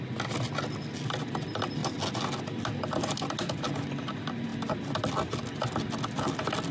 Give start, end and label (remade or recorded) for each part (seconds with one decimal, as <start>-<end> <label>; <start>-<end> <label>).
0.0-6.7 recorded